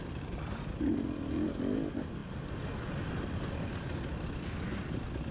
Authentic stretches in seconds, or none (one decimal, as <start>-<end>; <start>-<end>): 0.0-5.3